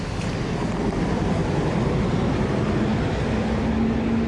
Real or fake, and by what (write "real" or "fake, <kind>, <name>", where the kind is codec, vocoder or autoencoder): real